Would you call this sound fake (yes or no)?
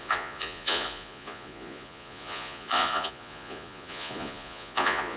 yes